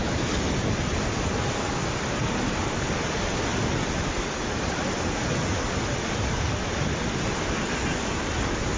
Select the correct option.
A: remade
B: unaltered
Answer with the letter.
B